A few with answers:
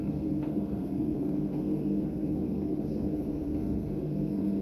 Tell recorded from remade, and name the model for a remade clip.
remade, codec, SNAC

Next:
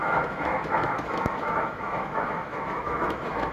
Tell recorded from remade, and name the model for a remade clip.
remade, autoencoder, DAC-VAE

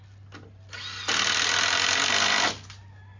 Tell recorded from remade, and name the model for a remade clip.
recorded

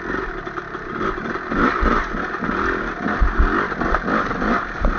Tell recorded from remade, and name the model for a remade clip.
recorded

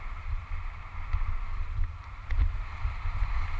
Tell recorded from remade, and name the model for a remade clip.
remade, vocoder, BigVGAN v2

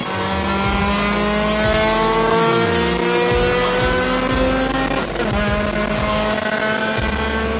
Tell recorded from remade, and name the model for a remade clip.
recorded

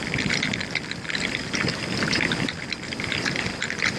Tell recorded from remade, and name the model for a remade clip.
recorded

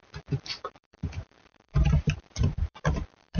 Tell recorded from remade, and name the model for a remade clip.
remade, vocoder, BigVGAN v2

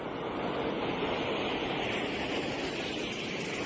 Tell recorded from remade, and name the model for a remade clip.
recorded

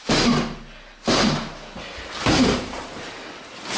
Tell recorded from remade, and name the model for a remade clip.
recorded